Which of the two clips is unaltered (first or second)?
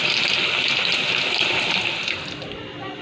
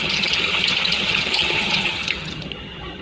first